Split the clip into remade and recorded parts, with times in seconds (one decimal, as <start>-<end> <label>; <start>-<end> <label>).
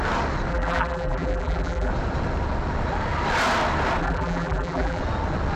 0.0-0.5 recorded; 0.5-1.9 remade; 1.9-4.0 recorded; 4.0-5.0 remade; 5.0-5.6 recorded